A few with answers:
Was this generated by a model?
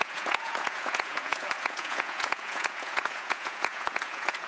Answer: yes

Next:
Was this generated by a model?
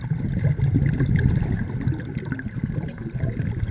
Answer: no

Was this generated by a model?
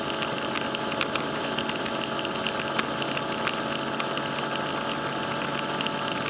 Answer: no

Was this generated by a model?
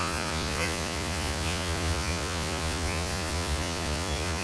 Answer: yes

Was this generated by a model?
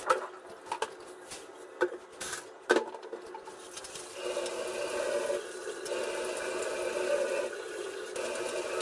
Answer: no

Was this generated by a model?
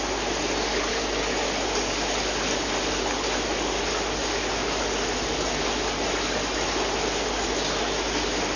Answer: no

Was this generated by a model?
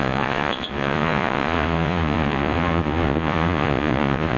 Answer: yes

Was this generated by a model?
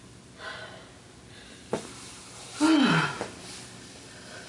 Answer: no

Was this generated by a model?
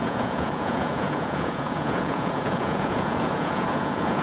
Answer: yes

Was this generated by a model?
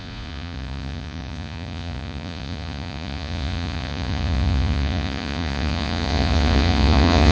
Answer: yes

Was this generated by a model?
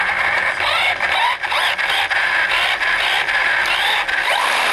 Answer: no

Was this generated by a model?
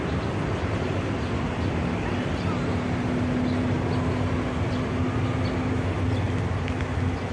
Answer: no